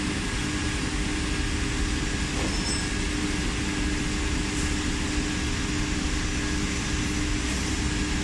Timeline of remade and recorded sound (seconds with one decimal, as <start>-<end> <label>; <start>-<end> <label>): 0.0-8.2 recorded